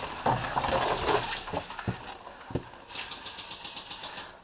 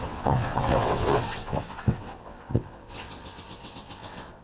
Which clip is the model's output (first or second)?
second